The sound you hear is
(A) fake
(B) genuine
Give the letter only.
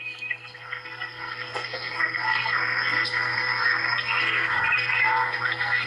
A